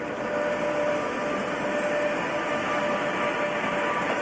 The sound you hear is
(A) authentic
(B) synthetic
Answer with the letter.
A